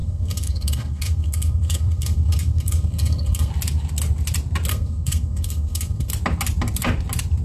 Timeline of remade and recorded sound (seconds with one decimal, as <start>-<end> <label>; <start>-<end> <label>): 0.0-3.5 remade; 3.5-4.7 recorded; 4.7-6.1 remade; 6.1-7.4 recorded